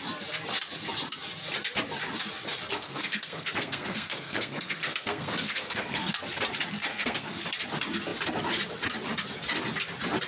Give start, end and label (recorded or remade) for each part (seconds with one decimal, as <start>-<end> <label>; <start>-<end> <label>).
0.0-2.7 recorded; 2.7-6.1 remade; 6.1-6.9 recorded; 6.9-7.4 remade; 7.4-10.3 recorded